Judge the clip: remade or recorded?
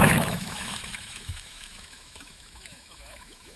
remade